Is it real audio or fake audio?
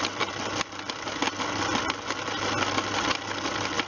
real